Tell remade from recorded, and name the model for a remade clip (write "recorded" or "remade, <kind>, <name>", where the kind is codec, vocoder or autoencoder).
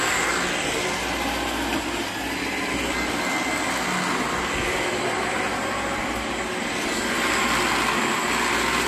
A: recorded